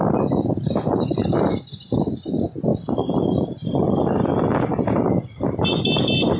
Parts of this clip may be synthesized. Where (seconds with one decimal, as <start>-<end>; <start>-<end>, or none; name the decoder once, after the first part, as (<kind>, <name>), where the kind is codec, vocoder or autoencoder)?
none